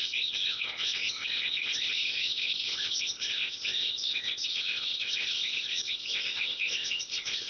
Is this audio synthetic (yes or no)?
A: yes